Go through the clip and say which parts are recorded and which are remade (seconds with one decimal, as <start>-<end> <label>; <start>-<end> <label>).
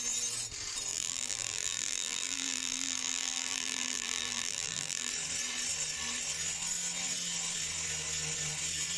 0.0-0.9 recorded; 0.9-5.1 remade; 5.1-9.0 recorded